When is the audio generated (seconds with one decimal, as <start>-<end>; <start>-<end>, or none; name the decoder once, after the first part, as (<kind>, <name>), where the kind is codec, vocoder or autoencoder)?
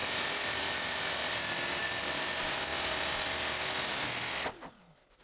none